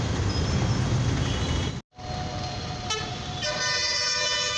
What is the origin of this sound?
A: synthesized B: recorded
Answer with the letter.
B